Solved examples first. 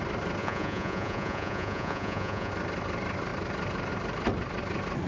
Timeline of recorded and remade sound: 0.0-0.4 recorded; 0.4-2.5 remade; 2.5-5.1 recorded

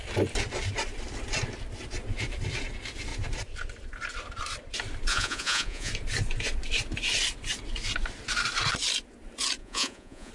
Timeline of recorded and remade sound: 0.0-5.1 recorded; 5.1-5.9 remade; 5.9-9.6 recorded; 9.6-10.3 remade

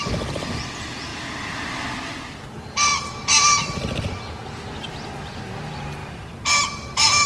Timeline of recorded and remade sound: 0.0-7.3 recorded

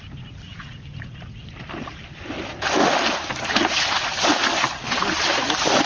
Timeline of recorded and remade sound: 0.0-0.5 recorded; 0.5-1.1 remade; 1.1-5.9 recorded